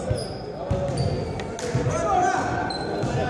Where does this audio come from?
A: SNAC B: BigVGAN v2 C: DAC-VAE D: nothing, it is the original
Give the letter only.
D